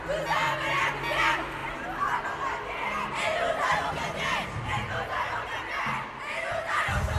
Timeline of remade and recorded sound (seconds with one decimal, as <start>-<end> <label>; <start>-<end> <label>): 0.0-7.2 recorded